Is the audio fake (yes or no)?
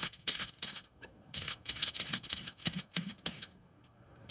yes